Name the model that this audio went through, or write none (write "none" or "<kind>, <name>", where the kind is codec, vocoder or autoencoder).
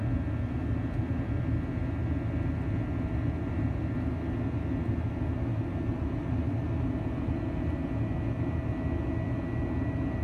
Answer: none